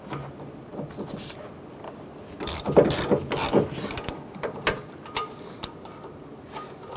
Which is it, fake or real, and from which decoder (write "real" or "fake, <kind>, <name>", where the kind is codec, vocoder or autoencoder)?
real